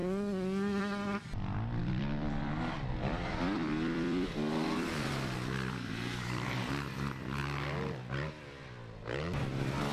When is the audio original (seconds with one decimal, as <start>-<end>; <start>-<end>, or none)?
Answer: 0.0-1.8; 6.6-9.9

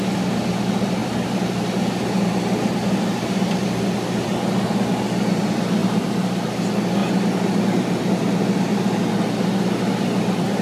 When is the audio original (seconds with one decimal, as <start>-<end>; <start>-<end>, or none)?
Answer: 0.0-5.8; 6.6-7.0; 8.0-10.6

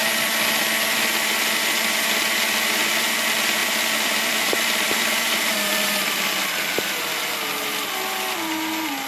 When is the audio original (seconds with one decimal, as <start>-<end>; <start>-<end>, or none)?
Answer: 0.0-3.6; 7.0-9.1

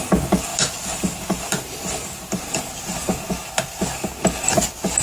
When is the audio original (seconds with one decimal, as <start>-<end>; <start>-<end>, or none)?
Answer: 0.0-5.0

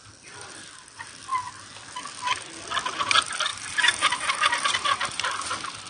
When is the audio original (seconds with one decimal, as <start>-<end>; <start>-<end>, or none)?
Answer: 0.0-3.5; 5.5-5.9

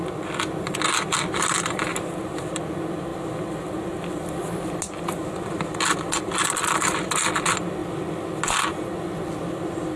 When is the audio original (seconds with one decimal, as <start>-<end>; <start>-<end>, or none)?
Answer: 0.0-1.9; 2.5-10.0

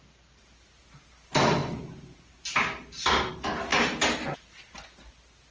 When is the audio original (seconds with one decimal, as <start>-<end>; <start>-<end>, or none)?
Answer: 0.0-5.5

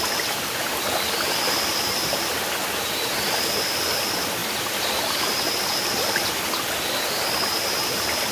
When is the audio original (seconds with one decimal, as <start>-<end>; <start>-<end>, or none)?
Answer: 0.0-8.3